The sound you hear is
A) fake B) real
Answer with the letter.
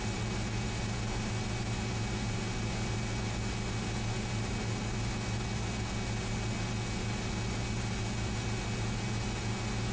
B